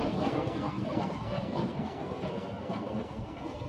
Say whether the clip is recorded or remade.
remade